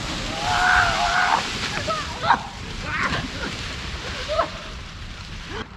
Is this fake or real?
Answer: real